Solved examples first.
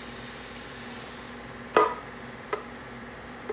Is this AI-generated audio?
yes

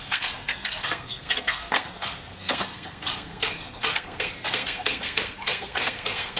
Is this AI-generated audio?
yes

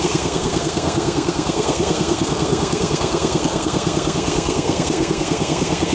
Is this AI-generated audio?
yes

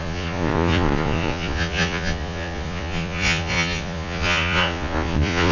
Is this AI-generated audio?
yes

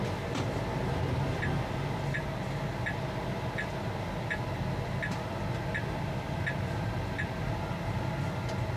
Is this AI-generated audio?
no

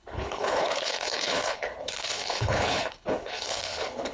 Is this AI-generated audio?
yes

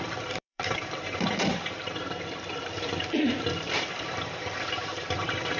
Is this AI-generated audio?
yes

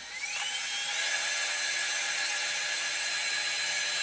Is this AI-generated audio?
no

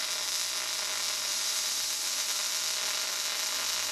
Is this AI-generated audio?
no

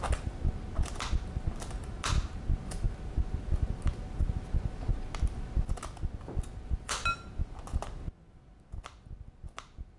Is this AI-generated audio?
no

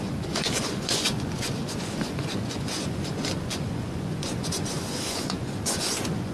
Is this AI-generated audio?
yes